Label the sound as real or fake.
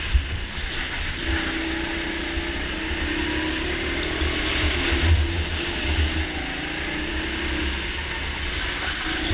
real